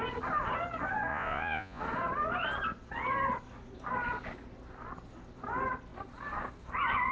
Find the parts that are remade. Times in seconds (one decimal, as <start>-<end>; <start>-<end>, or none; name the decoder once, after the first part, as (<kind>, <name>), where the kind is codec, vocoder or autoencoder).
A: 1.1-1.8 (vocoder, Vocos)